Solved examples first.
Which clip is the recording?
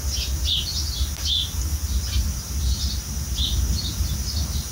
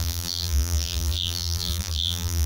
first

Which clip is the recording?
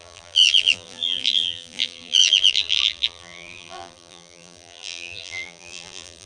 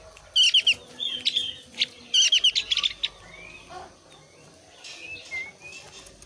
second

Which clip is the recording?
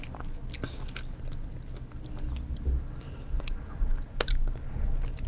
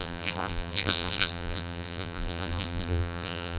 first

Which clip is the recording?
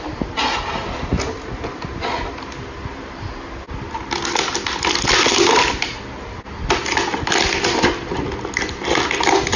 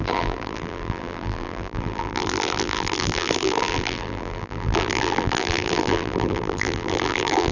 first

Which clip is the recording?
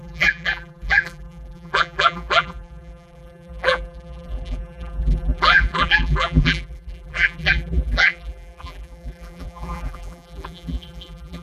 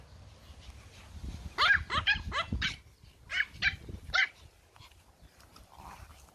second